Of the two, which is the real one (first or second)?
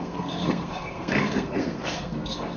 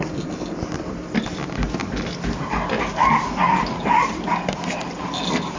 second